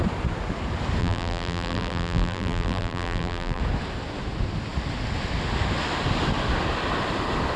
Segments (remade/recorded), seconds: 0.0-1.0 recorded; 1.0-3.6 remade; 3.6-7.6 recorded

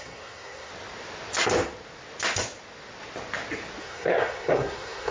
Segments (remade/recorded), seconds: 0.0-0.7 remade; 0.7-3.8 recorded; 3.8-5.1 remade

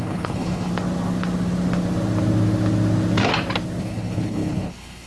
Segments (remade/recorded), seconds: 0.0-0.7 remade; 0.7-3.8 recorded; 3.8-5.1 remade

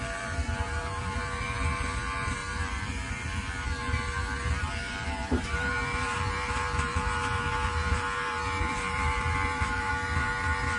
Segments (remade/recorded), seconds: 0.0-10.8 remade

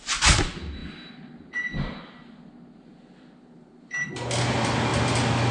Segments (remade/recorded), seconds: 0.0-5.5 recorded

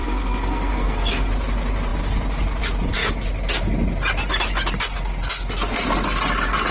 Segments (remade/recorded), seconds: 0.0-1.3 remade; 1.3-6.7 recorded

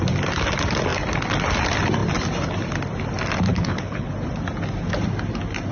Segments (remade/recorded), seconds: 0.0-3.5 recorded; 3.5-4.1 remade; 4.1-5.7 recorded

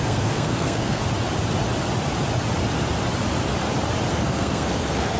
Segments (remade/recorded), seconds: 0.0-1.0 remade; 1.0-4.1 recorded; 4.1-5.2 remade